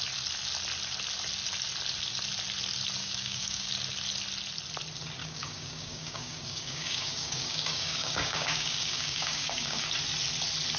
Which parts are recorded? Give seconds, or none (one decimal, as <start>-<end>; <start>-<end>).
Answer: 0.0-3.0; 3.7-5.2; 9.8-10.8